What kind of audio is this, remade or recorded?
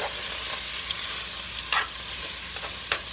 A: recorded